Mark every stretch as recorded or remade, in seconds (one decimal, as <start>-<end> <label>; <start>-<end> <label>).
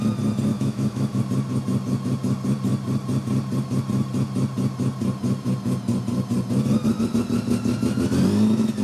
0.0-0.5 recorded; 0.5-1.2 remade; 1.2-8.8 recorded